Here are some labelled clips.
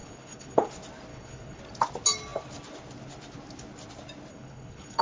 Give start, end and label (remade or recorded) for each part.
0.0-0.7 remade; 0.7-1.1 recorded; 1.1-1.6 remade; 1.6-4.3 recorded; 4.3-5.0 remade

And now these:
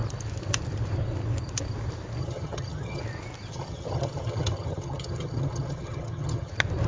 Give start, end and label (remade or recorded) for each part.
0.0-2.2 recorded; 2.2-3.0 remade; 3.0-3.5 recorded; 3.5-6.5 remade; 6.5-6.9 recorded

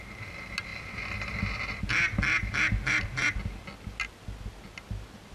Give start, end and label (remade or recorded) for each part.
0.0-5.3 recorded

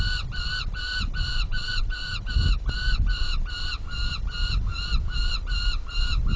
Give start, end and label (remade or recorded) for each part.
0.0-1.3 recorded; 1.3-2.3 remade; 2.3-6.4 recorded

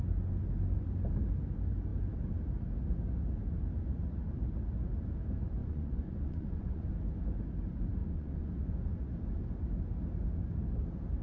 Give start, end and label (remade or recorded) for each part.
0.0-5.6 recorded; 5.6-6.9 remade; 6.9-8.0 recorded; 8.0-8.5 remade; 8.5-11.2 recorded

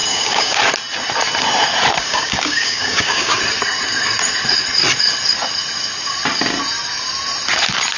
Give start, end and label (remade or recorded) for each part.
0.0-0.6 remade; 0.6-2.0 recorded; 2.0-3.4 remade; 3.4-8.0 recorded